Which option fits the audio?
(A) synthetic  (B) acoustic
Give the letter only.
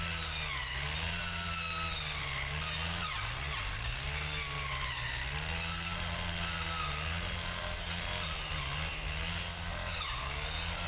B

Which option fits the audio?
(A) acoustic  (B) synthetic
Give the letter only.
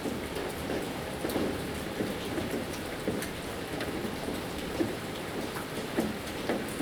B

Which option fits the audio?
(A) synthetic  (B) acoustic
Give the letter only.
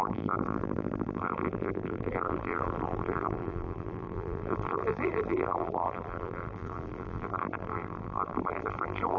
A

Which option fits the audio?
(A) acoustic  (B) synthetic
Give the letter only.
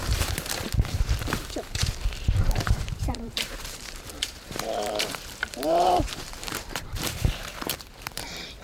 B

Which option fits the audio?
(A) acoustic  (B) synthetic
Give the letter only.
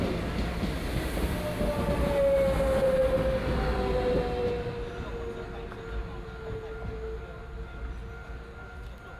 A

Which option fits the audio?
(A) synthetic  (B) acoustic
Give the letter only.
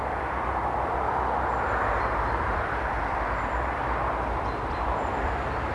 A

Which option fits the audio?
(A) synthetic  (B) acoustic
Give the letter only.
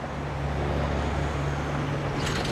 B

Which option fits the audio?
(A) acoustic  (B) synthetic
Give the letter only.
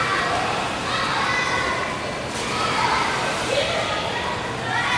A